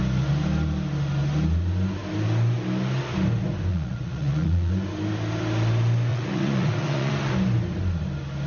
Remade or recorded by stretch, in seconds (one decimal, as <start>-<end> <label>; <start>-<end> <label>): 0.0-3.7 recorded; 3.7-4.7 remade; 4.7-6.1 recorded; 6.1-7.1 remade; 7.1-8.5 recorded